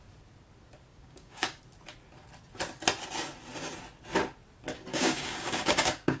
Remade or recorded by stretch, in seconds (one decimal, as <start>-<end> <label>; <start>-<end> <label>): 0.0-0.9 recorded; 0.9-1.6 remade; 1.6-4.9 recorded; 4.9-6.2 remade

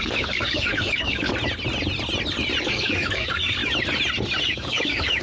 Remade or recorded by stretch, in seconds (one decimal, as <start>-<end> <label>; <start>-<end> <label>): 0.0-1.3 remade; 1.3-2.6 recorded; 2.6-3.6 remade; 3.6-4.4 recorded; 4.4-5.2 remade

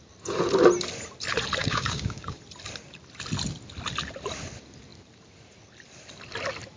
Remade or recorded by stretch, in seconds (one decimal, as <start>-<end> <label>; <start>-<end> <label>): 0.0-1.6 recorded; 1.6-2.4 remade; 2.4-6.8 recorded

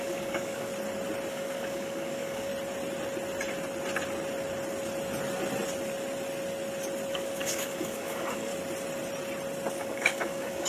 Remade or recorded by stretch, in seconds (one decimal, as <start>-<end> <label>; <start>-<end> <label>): 0.0-0.7 remade; 0.7-1.3 recorded; 1.3-2.5 remade; 2.5-7.1 recorded; 7.1-8.5 remade; 8.5-9.7 recorded; 9.7-10.7 remade

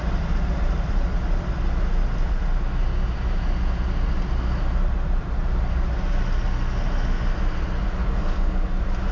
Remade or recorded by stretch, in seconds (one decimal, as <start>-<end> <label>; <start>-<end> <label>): 0.0-8.0 recorded; 8.0-8.7 remade; 8.7-9.1 recorded

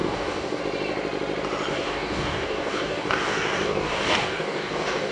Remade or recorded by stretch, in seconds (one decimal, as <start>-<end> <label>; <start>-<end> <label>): 0.0-0.6 remade; 0.6-1.7 recorded; 1.7-5.1 remade

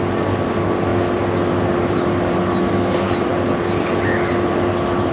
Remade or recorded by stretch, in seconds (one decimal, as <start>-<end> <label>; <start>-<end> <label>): 0.0-5.1 recorded